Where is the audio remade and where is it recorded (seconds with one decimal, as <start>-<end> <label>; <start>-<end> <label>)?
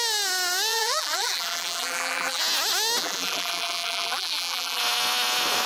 0.0-0.7 recorded; 0.7-2.4 remade; 2.4-3.0 recorded; 3.0-4.8 remade; 4.8-5.7 recorded